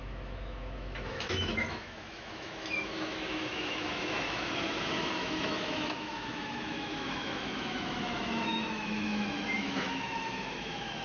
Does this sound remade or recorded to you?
remade